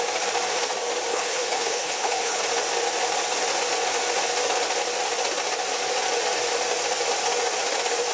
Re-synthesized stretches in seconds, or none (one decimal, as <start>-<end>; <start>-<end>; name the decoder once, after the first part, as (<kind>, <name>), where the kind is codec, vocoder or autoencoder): 1.1-2.4 (codec, HILCodec)